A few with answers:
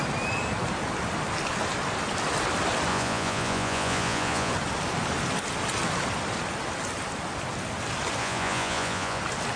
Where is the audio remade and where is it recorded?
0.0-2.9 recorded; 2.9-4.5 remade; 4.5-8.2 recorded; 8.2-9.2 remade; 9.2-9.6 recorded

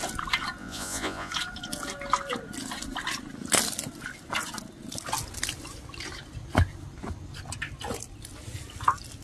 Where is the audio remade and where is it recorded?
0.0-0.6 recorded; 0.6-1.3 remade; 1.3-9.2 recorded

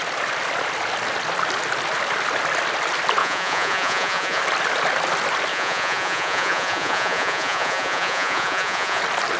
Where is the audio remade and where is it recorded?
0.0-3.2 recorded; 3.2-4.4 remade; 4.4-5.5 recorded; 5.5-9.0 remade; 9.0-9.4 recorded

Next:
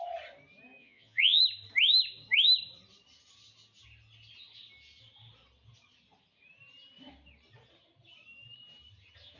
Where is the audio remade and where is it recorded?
0.0-0.8 recorded; 0.8-1.4 remade; 1.4-9.4 recorded